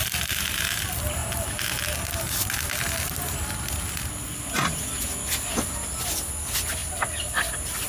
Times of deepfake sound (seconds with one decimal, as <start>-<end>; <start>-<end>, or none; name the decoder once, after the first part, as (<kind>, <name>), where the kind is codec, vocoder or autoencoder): none